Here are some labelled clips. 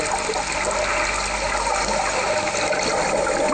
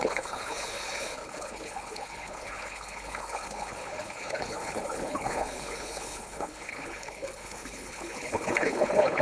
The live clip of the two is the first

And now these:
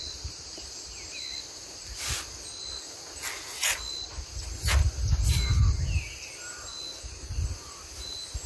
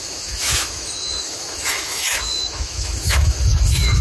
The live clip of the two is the first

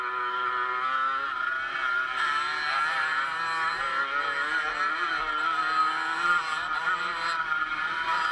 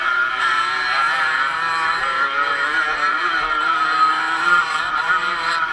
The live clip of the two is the first